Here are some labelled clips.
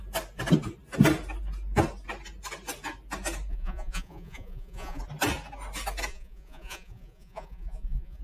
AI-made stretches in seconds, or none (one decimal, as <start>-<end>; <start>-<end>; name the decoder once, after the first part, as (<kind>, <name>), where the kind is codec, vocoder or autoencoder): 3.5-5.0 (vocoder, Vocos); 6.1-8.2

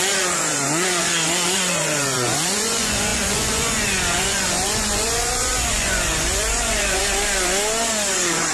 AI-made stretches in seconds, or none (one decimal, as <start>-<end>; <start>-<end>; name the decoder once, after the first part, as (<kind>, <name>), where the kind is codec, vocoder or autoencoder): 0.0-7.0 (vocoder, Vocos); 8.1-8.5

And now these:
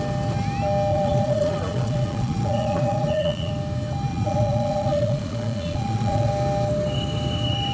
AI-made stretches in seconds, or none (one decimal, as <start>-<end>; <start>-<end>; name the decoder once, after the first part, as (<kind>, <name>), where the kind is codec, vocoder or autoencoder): 0.9-3.5 (vocoder, Vocos); 4.1-6.3

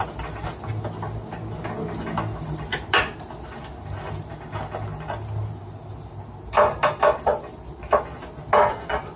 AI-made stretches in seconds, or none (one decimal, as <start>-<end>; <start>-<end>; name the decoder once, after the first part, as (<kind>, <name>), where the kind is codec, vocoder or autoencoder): none

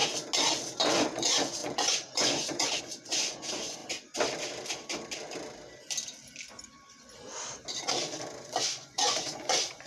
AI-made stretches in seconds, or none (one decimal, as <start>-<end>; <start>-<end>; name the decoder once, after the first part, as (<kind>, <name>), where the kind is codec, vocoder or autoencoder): 0.8-3.8 (vocoder, Vocos); 8.4-9.9

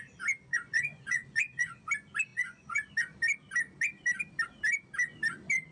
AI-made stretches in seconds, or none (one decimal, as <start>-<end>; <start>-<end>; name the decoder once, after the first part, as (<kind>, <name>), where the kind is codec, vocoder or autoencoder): 0.5-1.9 (vocoder, Vocos); 2.3-2.9